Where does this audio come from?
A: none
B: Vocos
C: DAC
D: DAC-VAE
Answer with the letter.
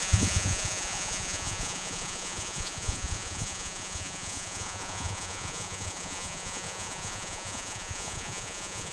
B